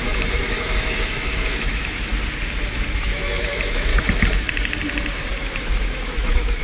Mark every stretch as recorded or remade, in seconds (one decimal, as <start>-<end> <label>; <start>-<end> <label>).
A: 0.0-2.1 remade; 2.1-3.0 recorded; 3.0-3.9 remade; 3.9-5.3 recorded; 5.3-6.6 remade